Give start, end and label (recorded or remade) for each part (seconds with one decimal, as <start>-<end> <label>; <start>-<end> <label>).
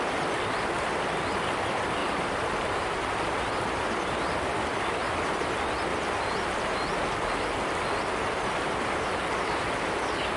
0.0-2.0 recorded; 2.0-3.4 remade; 3.4-5.9 recorded; 5.9-6.8 remade; 6.8-10.4 recorded